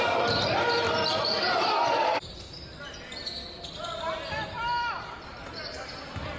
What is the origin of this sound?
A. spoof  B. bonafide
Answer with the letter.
B